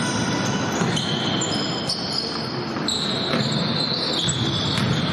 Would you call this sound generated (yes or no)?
no